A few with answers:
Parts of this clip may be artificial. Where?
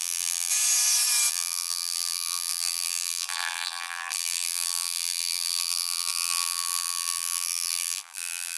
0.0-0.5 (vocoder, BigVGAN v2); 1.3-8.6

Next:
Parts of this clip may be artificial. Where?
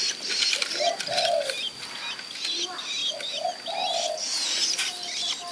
0.0-1.0 (vocoder, BigVGAN v2)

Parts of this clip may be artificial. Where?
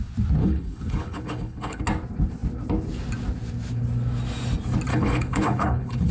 0.4-1.8 (codec, HILCodec); 4.9-6.1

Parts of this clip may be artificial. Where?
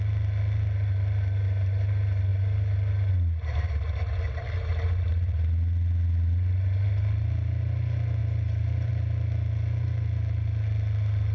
none